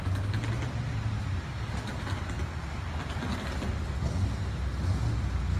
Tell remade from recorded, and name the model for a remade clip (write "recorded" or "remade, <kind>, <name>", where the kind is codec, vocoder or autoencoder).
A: recorded